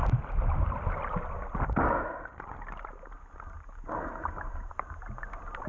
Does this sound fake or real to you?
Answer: real